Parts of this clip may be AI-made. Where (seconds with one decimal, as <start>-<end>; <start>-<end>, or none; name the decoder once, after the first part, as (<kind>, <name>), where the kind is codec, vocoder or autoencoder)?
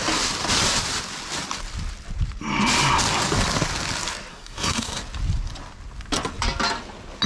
4.3-5.0 (codec, SNAC)